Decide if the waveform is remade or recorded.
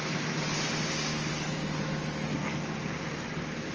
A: recorded